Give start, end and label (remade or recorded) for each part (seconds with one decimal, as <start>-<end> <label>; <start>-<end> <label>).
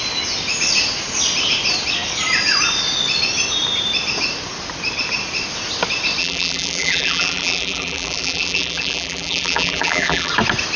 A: 0.0-6.2 recorded; 6.2-10.3 remade; 10.3-10.8 recorded